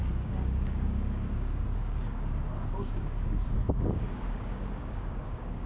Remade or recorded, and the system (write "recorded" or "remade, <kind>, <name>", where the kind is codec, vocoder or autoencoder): remade, codec, DAC